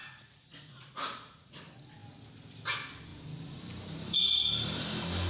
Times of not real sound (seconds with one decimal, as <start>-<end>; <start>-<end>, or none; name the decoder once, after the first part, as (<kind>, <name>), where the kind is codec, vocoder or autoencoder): 0.0-1.6 (vocoder, Vocos)